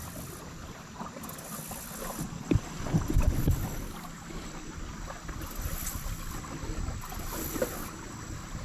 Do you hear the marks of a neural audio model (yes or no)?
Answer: no